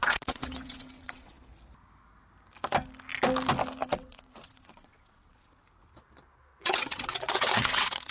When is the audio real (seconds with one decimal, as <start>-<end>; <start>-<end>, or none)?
1.3-3.8; 5.5-6.5